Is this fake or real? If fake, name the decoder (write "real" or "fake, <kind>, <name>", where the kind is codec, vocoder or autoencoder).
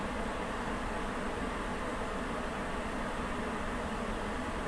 real